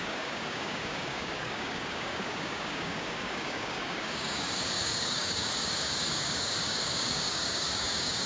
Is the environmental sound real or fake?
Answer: fake